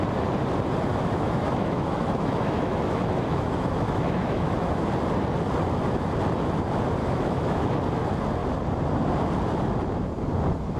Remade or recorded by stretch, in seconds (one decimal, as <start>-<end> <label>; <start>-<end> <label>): 0.0-0.9 recorded; 0.9-4.8 remade; 4.8-7.0 recorded; 7.0-7.7 remade; 7.7-10.8 recorded

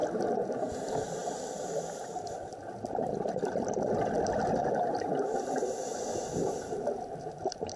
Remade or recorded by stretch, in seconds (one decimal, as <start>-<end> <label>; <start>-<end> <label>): 0.0-0.7 recorded; 0.7-7.8 remade